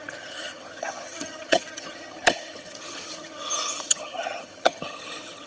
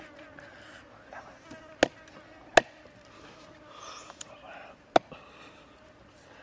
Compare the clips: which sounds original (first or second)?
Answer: second